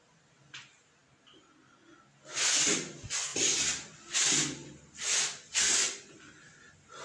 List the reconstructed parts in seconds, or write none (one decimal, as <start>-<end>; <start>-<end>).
none